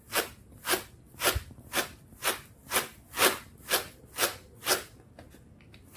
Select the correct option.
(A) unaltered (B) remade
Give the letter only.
A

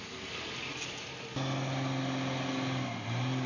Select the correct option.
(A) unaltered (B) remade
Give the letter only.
A